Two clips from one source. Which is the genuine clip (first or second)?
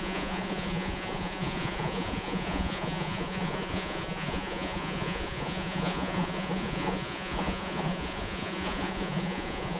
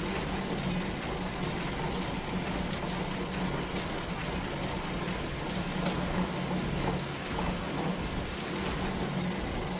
second